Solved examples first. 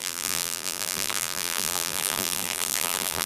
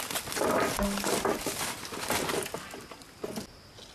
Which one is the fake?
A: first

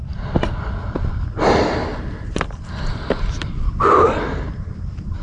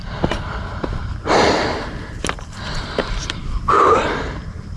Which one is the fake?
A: second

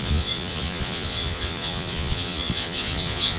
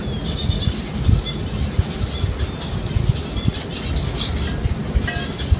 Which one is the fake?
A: first